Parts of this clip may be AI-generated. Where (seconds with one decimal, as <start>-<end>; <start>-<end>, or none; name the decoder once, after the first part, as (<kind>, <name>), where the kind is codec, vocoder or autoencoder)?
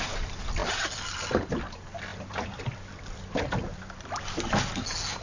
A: 0.6-1.1 (vocoder, BigVGAN v2); 2.1-2.7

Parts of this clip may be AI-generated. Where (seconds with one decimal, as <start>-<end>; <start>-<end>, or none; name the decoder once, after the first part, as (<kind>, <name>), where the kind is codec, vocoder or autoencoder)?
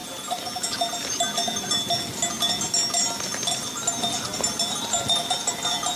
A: none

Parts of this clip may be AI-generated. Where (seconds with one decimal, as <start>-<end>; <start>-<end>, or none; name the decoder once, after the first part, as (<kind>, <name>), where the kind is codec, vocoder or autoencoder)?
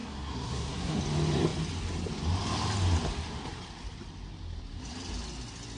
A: 0.0-1.0 (codec, SNAC)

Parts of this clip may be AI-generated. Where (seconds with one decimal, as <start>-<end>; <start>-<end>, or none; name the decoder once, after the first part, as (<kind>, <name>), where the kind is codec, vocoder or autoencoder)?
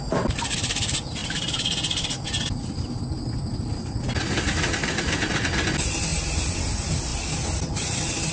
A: none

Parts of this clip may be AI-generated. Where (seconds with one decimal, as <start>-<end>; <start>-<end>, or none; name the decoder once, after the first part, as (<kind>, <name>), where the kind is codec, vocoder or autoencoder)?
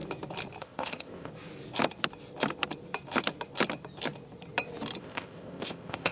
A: 0.6-1.3 (codec, ZipCodec); 5.0-6.1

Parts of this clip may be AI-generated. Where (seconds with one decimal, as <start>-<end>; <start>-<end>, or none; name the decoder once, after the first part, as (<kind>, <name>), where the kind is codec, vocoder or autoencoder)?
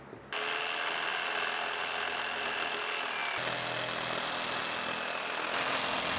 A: none